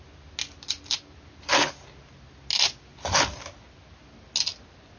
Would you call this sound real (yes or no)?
yes